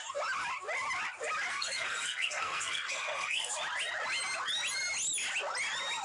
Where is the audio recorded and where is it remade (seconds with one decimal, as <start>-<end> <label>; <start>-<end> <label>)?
0.0-1.5 recorded; 1.5-3.5 remade; 3.5-6.0 recorded